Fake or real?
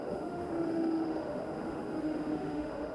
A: fake